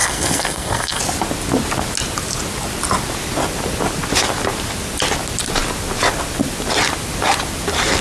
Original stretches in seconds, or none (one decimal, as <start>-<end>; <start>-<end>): 1.0-8.0